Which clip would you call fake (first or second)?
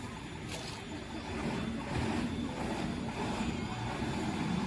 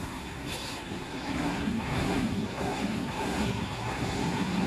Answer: second